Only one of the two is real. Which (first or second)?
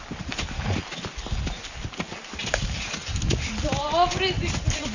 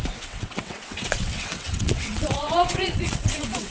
first